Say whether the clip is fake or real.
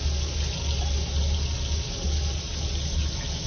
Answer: real